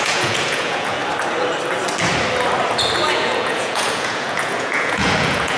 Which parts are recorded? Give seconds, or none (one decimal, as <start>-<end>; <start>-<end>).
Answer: 1.0-3.1

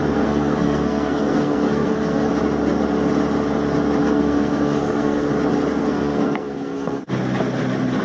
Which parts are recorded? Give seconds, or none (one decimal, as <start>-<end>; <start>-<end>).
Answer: 2.3-4.0; 5.3-5.8; 7.1-8.0

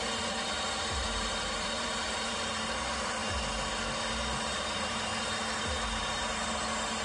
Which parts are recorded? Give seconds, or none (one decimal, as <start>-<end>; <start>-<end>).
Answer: 3.2-4.6; 5.1-5.6

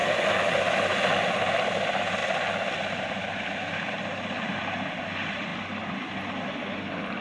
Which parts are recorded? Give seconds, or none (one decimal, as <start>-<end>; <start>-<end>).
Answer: 0.0-7.2